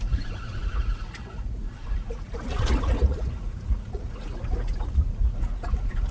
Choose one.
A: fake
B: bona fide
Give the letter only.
A